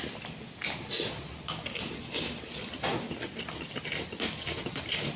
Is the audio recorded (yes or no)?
yes